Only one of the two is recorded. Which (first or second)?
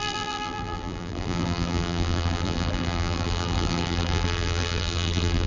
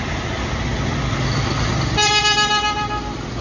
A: second